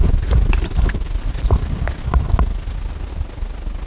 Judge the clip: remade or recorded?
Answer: recorded